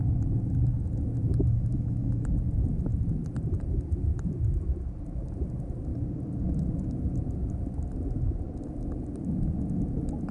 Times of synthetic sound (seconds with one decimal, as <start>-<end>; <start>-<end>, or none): 1.3-2.3